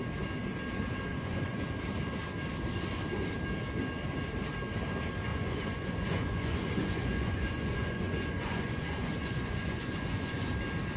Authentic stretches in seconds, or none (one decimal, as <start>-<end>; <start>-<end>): 0.0-1.1; 1.6-5.3; 10.5-11.0